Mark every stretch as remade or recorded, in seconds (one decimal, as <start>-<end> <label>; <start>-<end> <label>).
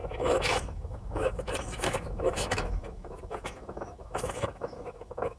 0.0-5.4 remade